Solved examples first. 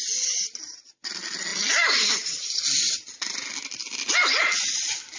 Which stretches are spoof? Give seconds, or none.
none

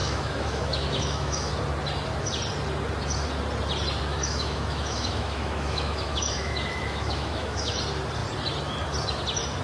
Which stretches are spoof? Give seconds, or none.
0.0-1.5 (autoencoder, DAC-VAE); 4.1-7.8

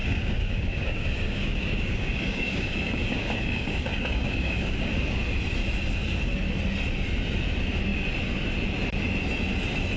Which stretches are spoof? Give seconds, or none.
0.0-4.9 (codec, DAC)

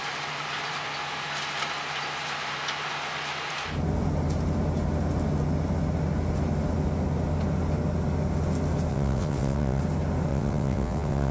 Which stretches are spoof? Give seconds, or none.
8.9-9.8 (vocoder, WaveNeXt); 10.3-11.3

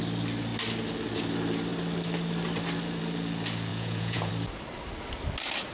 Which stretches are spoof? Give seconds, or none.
3.7-4.3 (vocoder, Vocos)

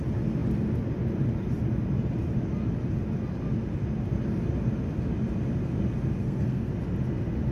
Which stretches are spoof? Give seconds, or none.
6.2-6.7 (codec, SNAC)

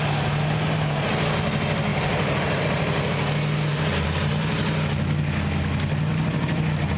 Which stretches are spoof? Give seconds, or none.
1.9-2.6 (vocoder, BigVGAN v2)